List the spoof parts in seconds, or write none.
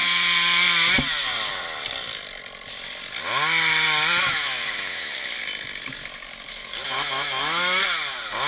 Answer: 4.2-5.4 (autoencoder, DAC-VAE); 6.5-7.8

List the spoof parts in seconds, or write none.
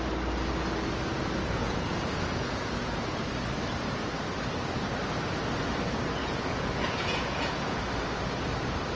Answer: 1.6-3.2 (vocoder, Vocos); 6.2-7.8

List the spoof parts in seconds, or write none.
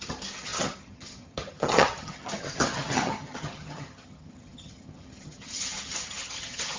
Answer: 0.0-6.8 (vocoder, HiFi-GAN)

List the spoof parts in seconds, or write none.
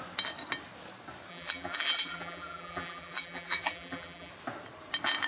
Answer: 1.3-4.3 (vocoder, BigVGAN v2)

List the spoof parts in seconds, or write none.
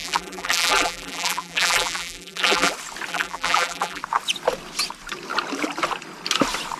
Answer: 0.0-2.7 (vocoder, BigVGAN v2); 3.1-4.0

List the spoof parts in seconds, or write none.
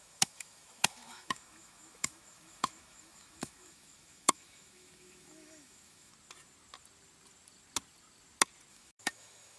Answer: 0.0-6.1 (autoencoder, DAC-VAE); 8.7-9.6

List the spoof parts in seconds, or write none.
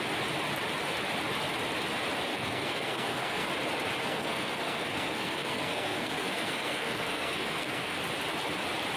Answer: 2.3-3.5 (codec, SNAC); 4.0-8.0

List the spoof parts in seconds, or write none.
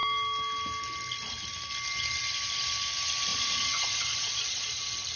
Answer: 3.3-4.8 (vocoder, Vocos)